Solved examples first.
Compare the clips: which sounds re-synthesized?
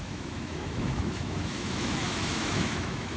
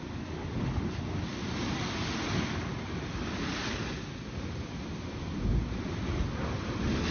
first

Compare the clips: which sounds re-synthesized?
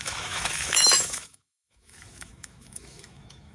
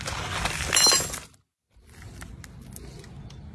first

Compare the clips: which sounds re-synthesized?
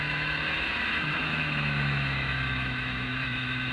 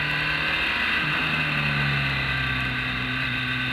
first